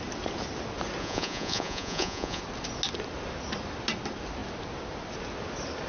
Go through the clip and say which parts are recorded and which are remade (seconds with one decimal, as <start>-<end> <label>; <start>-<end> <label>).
0.0-1.0 recorded; 1.0-2.4 remade; 2.4-5.9 recorded